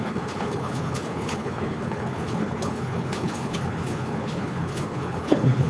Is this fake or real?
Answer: fake